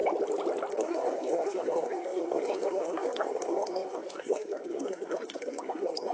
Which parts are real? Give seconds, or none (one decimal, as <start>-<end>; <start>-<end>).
0.0-0.7